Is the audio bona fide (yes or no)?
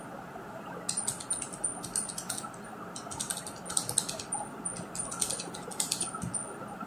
yes